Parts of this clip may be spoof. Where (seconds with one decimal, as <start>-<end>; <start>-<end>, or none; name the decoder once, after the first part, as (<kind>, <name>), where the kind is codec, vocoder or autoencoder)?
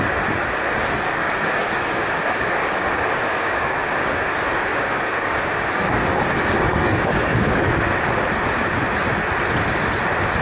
1.2-4.2 (codec, DAC); 4.7-7.6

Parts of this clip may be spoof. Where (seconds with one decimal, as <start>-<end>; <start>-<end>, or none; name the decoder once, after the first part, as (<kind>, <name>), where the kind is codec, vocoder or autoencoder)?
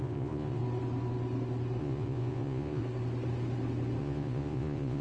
0.0-0.6 (vocoder, Vocos); 1.8-2.8; 4.0-5.0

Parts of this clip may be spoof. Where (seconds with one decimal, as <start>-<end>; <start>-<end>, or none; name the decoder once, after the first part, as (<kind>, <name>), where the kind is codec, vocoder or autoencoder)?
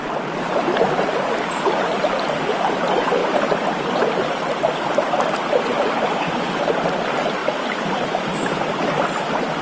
3.2-4.1 (vocoder, BigVGAN v2); 5.7-6.6; 7.4-9.6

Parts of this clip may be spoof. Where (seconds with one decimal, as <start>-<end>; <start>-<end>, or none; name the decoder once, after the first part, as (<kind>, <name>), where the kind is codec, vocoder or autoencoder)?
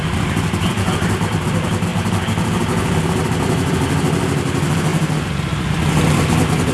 none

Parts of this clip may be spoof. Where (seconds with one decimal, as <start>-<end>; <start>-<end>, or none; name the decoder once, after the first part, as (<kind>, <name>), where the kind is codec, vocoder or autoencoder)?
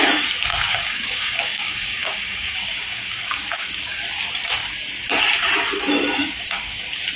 0.5-4.0 (codec, DAC); 6.2-6.8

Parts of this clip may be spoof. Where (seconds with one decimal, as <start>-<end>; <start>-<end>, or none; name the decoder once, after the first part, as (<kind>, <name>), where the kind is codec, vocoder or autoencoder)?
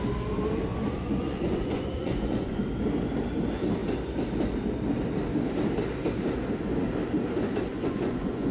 0.7-2.6 (vocoder, Vocos); 7.7-8.5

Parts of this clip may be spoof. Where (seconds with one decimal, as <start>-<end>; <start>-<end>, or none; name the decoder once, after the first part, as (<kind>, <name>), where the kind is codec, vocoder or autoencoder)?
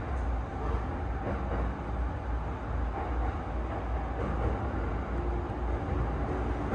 none